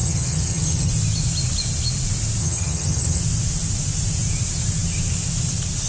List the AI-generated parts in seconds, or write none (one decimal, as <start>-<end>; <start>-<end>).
0.0-0.9; 2.4-3.2